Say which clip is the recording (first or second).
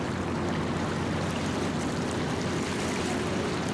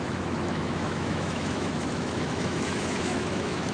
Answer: first